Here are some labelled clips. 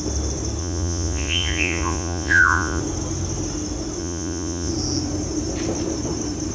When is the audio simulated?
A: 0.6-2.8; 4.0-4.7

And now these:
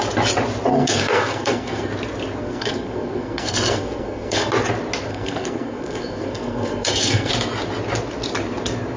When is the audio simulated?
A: 0.7-1.9; 2.4-4.5; 5.1-7.3

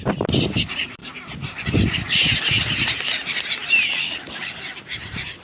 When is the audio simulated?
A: 0.0-5.4